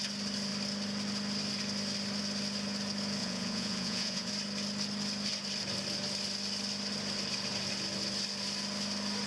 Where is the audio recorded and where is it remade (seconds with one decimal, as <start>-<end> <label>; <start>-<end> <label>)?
0.0-3.2 recorded; 3.2-4.3 remade; 4.3-9.3 recorded